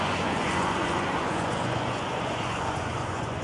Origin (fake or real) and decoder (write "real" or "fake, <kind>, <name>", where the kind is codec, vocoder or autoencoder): fake, vocoder, Vocos